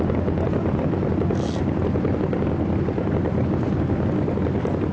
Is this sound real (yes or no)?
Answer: yes